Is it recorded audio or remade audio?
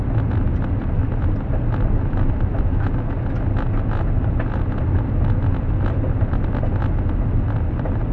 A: recorded